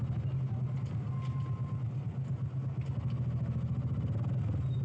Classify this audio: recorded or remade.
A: recorded